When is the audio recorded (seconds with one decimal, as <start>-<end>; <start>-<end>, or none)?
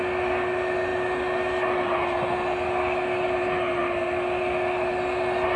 0.0-5.6